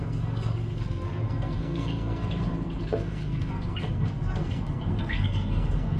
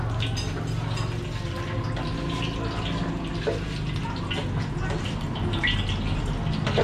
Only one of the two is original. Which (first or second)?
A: second